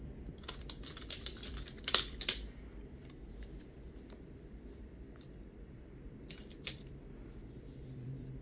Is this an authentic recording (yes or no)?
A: no